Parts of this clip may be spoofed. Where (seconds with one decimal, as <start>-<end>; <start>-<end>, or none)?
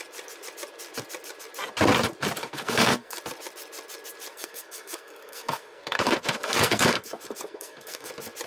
2.4-3.2; 4.3-8.1